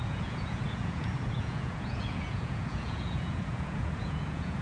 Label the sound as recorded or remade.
remade